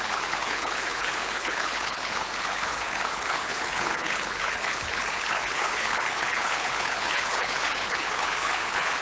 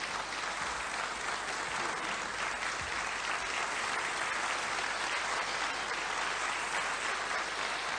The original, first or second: second